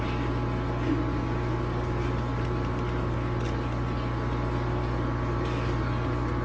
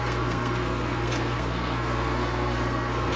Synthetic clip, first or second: second